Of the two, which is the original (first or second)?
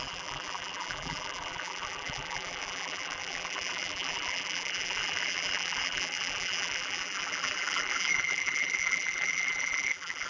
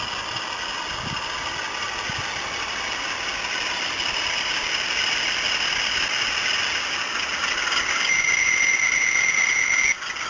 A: second